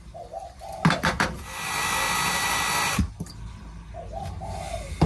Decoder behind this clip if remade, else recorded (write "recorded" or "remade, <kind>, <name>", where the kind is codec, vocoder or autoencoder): recorded